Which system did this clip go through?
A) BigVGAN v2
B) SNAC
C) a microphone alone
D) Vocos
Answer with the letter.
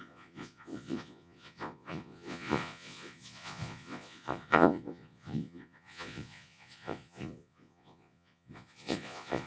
D